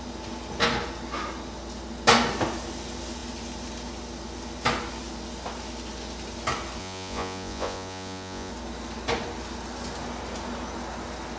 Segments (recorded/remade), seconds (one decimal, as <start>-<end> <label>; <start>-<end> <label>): 0.0-6.8 recorded; 6.8-8.5 remade; 8.5-11.4 recorded